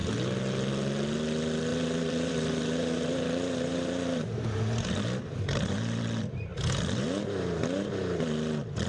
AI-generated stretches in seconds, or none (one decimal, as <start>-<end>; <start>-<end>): 1.7-6.0; 6.5-8.2